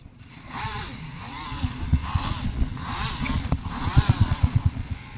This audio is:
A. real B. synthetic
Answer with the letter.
B